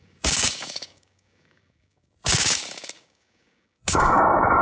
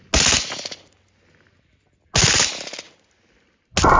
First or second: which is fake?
first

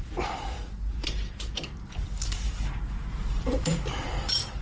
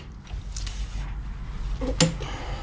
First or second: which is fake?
first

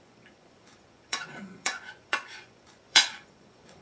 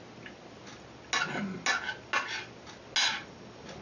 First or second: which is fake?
first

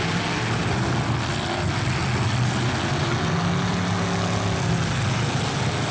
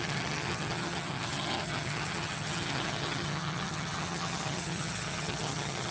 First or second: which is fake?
second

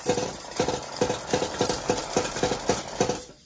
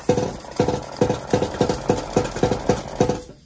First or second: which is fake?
first